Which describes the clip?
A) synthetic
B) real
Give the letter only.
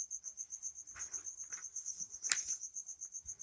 B